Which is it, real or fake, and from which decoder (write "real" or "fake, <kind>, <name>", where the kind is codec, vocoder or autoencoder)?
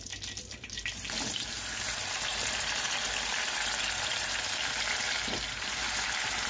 real